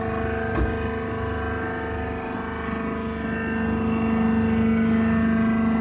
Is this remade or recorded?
recorded